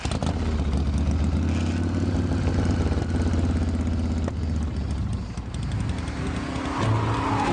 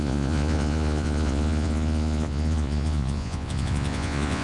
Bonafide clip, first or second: first